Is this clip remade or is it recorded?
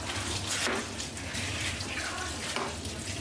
recorded